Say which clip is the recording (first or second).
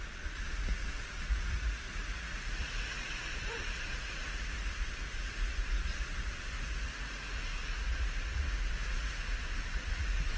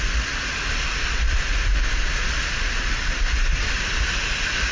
second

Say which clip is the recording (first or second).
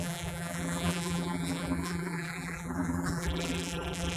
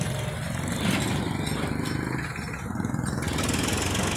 second